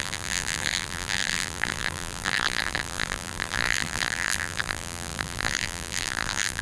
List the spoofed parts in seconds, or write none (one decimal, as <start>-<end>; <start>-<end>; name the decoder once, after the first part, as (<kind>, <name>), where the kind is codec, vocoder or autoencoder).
0.0-6.6 (vocoder, BigVGAN v2)